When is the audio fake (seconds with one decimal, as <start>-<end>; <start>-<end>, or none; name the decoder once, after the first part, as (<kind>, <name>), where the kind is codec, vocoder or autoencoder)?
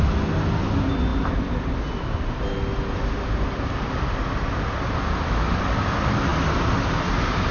none